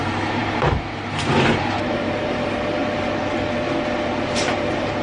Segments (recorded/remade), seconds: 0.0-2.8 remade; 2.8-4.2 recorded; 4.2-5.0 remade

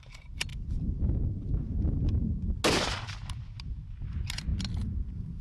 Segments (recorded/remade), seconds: 0.0-5.4 recorded

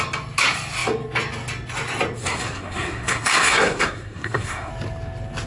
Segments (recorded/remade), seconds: 0.0-2.2 recorded; 2.2-4.7 remade; 4.7-5.5 recorded

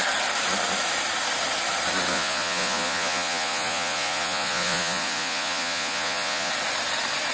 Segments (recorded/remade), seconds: 0.0-2.1 recorded; 2.1-6.5 remade; 6.5-7.3 recorded

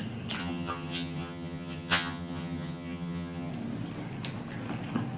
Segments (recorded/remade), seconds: 0.0-0.4 recorded; 0.4-3.5 remade; 3.5-5.2 recorded

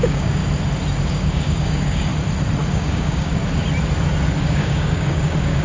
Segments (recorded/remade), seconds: 0.0-0.4 remade; 0.4-1.1 recorded; 1.1-2.1 remade; 2.1-2.7 recorded; 2.7-3.4 remade; 3.4-4.4 recorded; 4.4-5.6 remade

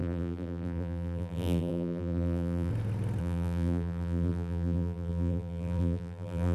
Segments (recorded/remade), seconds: 0.0-2.7 remade; 2.7-3.2 recorded; 3.2-6.5 remade